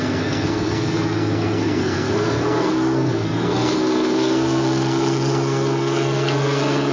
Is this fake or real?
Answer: fake